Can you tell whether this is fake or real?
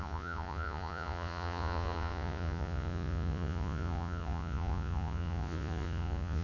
fake